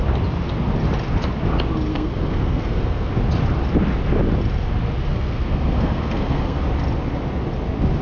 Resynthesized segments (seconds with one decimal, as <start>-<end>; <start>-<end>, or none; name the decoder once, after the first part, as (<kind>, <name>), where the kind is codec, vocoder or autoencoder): 1.9-3.1 (codec, SNAC); 5.1-6.6